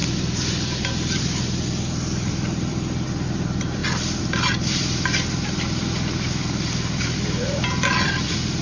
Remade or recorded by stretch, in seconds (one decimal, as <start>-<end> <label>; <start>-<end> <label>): 0.0-3.8 remade; 3.8-4.5 recorded; 4.5-8.6 remade